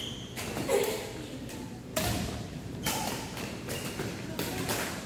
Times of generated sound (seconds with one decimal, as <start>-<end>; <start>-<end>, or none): 1.9-4.0